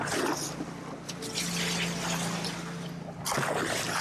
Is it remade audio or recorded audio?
recorded